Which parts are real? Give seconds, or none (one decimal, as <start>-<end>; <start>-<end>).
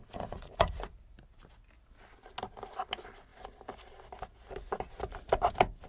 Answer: 0.8-5.9